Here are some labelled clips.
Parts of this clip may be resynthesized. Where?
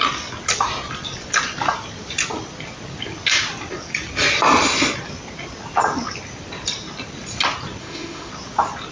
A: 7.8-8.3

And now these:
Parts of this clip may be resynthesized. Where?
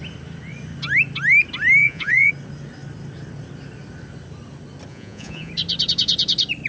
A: 1.8-2.3; 4.9-5.5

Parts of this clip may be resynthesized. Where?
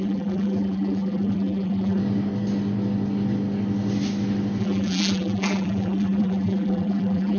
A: 0.0-2.0; 4.6-7.4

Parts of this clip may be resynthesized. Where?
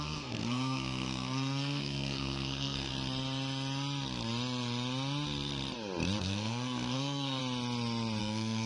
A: 0.0-2.9; 6.2-7.4; 8.2-8.7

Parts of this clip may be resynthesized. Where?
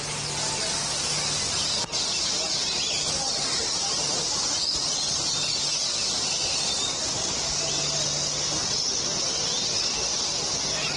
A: 3.6-7.0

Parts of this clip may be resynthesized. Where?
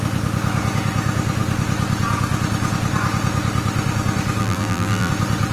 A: 4.4-5.1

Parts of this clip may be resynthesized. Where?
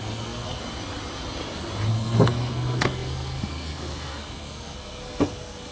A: 0.0-0.6; 1.9-5.7